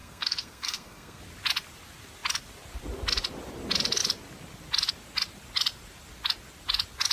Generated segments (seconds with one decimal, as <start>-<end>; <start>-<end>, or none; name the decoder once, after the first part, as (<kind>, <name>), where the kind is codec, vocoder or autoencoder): 0.0-1.2 (codec, SNAC)